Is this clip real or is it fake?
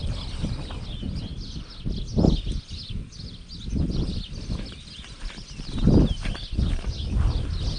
real